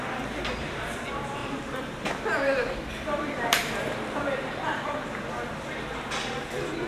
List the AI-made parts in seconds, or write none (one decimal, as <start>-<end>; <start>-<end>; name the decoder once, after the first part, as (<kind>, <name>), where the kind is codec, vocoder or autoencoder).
1.4-5.3 (vocoder, BigVGAN v2)